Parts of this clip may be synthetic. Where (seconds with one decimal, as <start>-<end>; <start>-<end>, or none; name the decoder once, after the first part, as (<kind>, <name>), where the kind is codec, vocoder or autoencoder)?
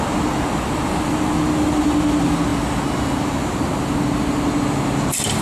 none